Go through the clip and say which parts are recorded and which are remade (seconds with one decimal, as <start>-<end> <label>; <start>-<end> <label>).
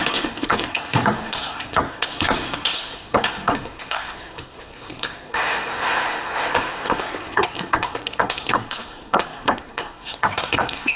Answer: 0.0-11.0 remade